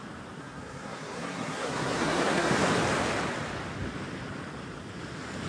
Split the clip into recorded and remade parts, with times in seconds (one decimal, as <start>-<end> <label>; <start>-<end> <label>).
0.0-0.4 recorded; 0.4-2.5 remade; 2.5-5.5 recorded